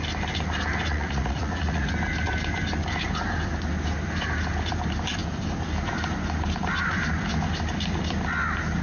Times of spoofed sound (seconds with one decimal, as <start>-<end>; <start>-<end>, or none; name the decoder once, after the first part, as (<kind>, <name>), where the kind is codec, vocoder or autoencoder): 0.9-1.9 (vocoder, Vocos)